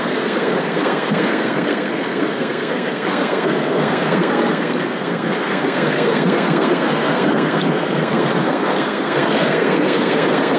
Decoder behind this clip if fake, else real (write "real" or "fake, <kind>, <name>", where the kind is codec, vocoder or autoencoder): fake, codec, SNAC